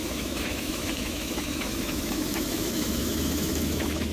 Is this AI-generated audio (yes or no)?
yes